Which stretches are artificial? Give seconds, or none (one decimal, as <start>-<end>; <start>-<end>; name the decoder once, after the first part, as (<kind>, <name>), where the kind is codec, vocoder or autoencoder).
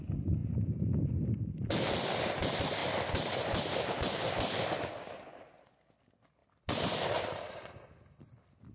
2.8-4.5 (vocoder, BigVGAN v2); 6.4-8.7